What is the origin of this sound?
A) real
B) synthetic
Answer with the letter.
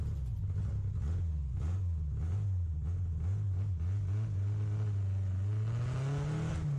A